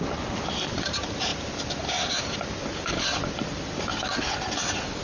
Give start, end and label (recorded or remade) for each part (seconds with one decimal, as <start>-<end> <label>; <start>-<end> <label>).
0.0-5.0 recorded